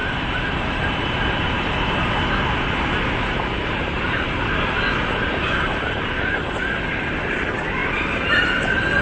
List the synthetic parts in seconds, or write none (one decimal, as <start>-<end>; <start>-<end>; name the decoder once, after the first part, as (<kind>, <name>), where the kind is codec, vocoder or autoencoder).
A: 0.0-4.5 (vocoder, BigVGAN v2); 7.8-8.4